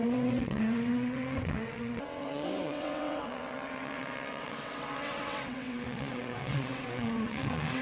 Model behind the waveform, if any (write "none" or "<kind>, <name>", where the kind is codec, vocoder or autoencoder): vocoder, WaveNeXt